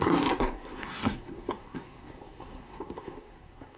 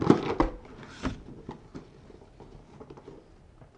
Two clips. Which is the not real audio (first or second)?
first